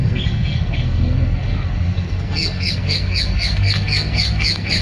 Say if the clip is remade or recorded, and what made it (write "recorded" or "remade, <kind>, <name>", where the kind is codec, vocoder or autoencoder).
remade, codec, SNAC